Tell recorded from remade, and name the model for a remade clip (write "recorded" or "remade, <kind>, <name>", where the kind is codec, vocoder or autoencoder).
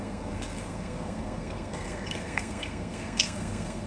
remade, codec, SNAC